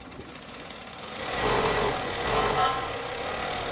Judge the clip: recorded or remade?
remade